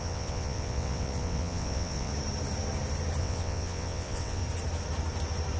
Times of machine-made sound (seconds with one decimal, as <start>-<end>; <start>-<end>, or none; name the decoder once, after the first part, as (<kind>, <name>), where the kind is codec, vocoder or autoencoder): 0.0-2.1 (vocoder, WaveNeXt); 3.2-4.4